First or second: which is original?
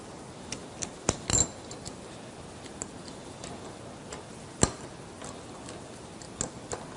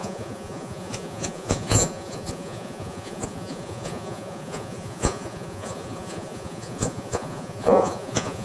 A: first